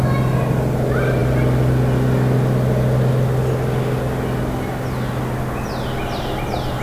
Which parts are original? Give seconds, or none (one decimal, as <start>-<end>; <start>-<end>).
0.0-6.8